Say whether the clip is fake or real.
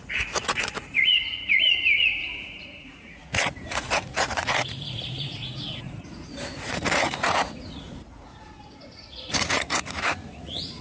fake